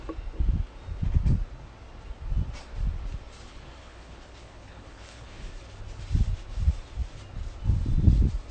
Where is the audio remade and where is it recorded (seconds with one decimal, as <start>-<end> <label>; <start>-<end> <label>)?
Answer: 0.0-3.8 recorded; 3.8-5.5 remade; 5.5-8.5 recorded